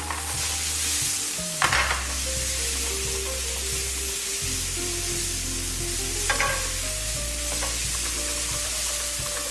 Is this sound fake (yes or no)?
no